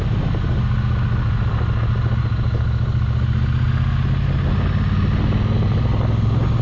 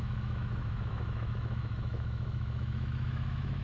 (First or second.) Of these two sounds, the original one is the first